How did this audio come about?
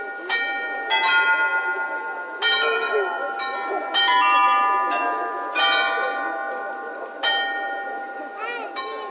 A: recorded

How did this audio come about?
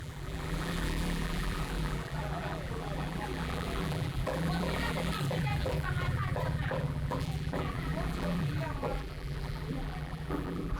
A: remade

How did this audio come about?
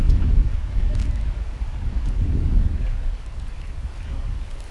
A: remade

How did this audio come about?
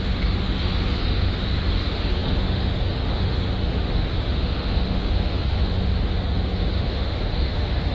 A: remade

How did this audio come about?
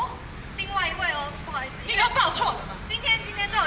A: recorded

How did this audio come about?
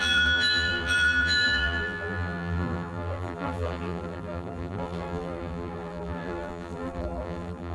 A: remade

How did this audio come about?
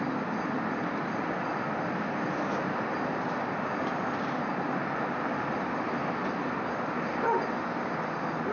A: recorded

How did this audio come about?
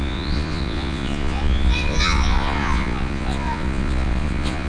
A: remade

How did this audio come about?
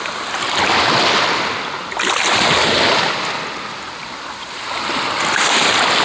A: recorded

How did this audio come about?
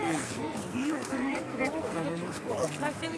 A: remade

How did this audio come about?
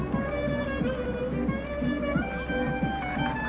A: recorded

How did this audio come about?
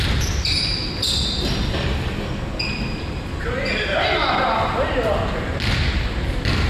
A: recorded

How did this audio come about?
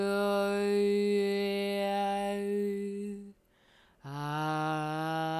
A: recorded